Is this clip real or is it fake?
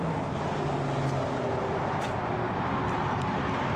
real